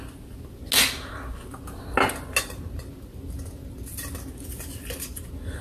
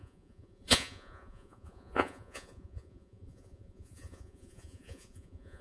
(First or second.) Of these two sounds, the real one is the first